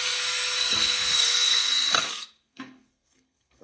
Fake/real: fake